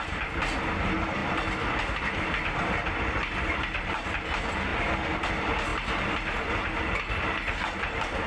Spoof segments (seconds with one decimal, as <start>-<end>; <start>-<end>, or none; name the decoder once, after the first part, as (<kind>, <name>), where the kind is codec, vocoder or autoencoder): none